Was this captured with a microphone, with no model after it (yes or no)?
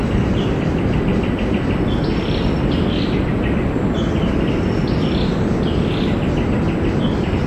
yes